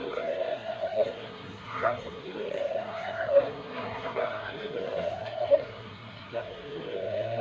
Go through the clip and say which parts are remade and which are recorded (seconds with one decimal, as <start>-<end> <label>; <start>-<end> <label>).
0.0-7.4 remade